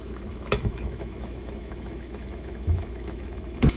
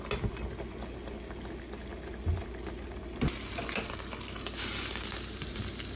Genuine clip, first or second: second